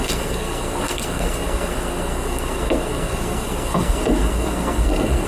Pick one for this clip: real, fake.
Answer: fake